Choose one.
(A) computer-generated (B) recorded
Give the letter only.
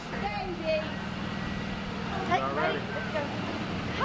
B